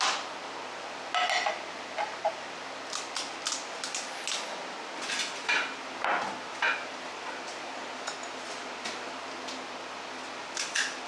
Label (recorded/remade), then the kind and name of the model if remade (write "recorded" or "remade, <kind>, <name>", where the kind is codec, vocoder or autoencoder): recorded